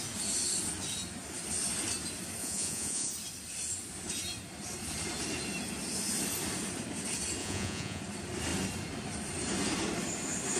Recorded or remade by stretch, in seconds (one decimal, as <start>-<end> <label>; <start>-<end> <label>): 0.0-2.4 recorded; 2.4-3.1 remade; 3.1-7.4 recorded; 7.4-8.0 remade; 8.0-10.6 recorded